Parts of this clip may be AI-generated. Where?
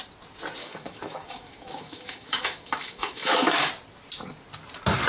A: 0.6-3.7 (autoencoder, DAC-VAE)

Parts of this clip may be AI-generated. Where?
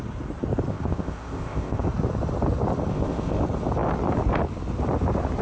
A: 0.7-1.8 (codec, ZipCodec); 2.9-3.4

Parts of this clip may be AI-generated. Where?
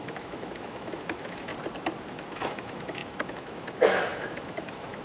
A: 0.0-1.5 (autoencoder, DAC-VAE); 2.1-5.0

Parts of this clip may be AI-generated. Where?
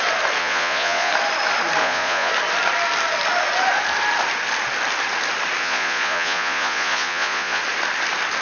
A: 0.4-1.1 (vocoder, Vocos); 1.8-2.3; 5.6-7.6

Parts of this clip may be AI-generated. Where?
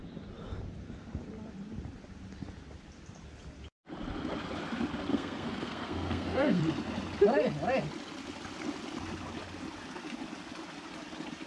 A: 5.1-6.6 (codec, SNAC)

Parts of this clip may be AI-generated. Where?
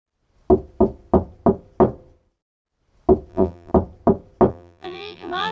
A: 3.3-3.7 (vocoder, BigVGAN v2); 4.5-5.5